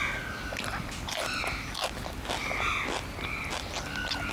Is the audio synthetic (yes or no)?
no